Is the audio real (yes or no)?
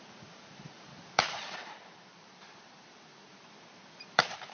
no